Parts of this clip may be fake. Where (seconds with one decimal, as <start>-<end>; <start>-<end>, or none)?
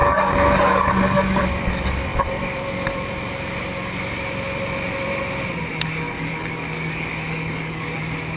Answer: 0.0-1.4; 5.7-8.0